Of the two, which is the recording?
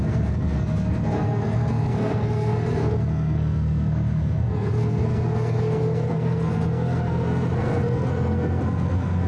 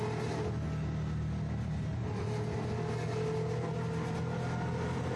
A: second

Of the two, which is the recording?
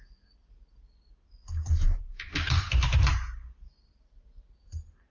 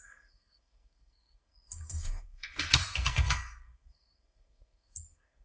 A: first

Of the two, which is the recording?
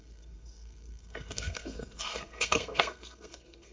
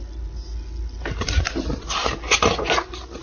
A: second